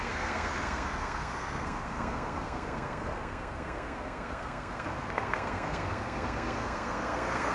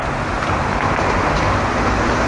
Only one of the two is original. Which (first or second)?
second